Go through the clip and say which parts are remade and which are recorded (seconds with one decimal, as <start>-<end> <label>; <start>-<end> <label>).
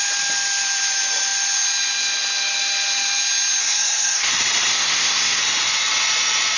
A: 0.0-3.6 recorded; 3.6-4.3 remade; 4.3-4.7 recorded; 4.7-5.4 remade; 5.4-6.6 recorded